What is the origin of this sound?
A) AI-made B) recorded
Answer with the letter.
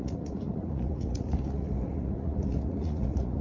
A